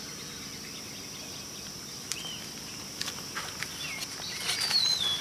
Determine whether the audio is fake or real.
real